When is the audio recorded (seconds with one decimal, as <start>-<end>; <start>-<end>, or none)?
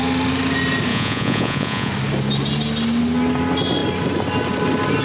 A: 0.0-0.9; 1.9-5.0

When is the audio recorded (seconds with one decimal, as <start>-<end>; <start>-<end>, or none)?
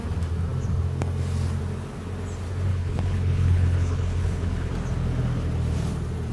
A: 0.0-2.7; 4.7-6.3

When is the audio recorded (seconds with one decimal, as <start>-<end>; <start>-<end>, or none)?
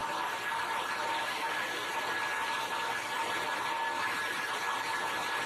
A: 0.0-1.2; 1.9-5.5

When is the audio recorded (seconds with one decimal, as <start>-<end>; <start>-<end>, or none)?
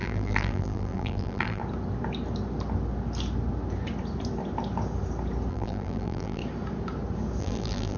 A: 1.6-5.5; 6.4-7.4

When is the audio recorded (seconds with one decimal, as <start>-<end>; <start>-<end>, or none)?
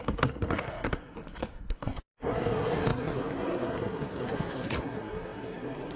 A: none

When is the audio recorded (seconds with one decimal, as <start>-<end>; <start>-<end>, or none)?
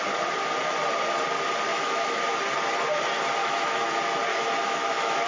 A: 0.0-1.7; 2.2-3.4; 3.9-4.3